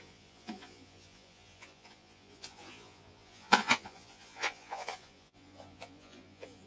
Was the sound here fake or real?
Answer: fake